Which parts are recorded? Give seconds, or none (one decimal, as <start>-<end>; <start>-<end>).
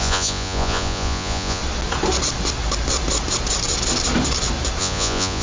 1.6-4.8